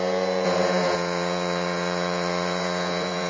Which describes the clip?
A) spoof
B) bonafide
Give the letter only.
A